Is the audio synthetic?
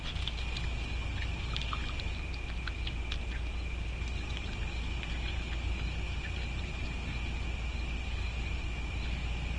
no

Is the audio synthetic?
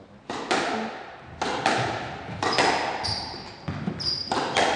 no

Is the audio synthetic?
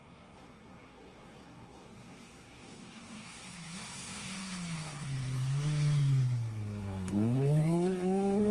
yes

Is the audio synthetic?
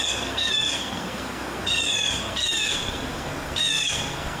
yes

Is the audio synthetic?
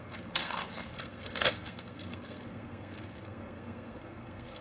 yes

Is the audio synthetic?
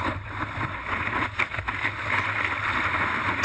no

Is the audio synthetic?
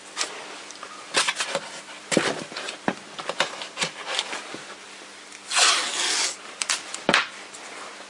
no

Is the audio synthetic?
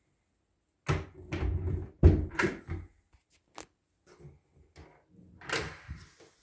no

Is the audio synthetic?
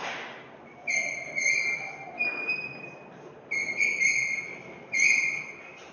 no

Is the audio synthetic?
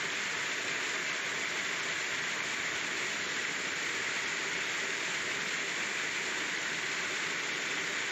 no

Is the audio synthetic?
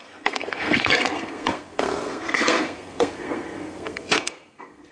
yes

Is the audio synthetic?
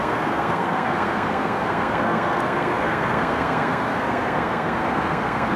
yes